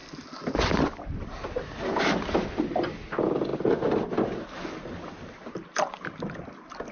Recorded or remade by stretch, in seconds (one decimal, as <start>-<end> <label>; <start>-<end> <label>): 0.0-2.0 remade; 2.0-3.5 recorded; 3.5-5.5 remade; 5.5-6.9 recorded